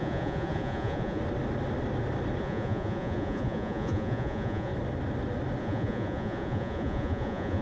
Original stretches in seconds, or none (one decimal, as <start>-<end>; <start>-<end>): 1.2-2.4; 4.7-5.6